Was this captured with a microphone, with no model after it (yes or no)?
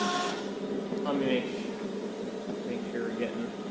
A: yes